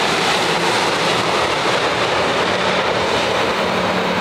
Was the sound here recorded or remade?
remade